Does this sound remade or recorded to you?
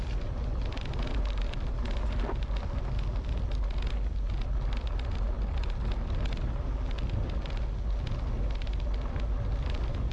recorded